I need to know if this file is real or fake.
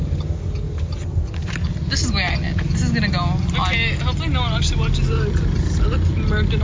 real